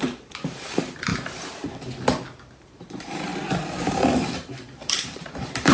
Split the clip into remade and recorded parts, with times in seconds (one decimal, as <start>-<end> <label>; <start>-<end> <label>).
0.0-1.1 remade; 1.1-2.9 recorded; 2.9-3.3 remade; 3.3-3.9 recorded; 3.9-5.7 remade